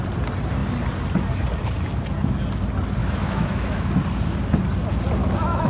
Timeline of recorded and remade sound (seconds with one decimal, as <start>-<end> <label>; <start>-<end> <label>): 0.0-3.0 recorded; 3.0-3.9 remade; 3.9-5.2 recorded; 5.2-5.7 remade